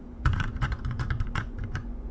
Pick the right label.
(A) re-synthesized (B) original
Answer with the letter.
A